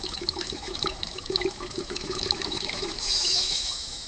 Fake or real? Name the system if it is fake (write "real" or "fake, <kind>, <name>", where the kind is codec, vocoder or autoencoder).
fake, autoencoder, DAC-VAE